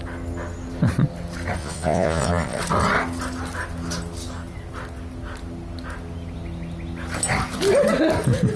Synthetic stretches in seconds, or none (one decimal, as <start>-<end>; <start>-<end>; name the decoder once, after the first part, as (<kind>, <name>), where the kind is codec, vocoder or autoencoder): 1.6-2.6 (vocoder, Vocos)